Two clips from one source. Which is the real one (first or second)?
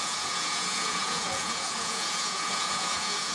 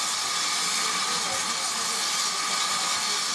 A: second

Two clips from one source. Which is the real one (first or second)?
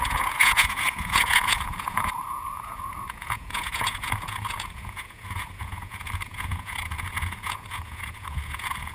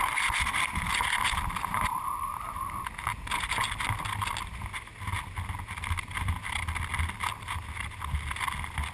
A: second